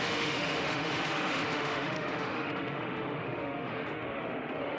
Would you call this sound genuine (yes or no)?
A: no